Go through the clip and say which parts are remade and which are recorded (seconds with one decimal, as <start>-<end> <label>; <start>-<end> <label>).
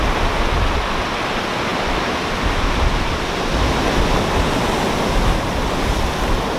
0.0-6.6 recorded